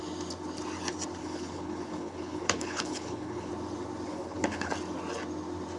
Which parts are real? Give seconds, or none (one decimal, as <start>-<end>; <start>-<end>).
0.0-1.2; 3.5-4.1; 4.7-5.8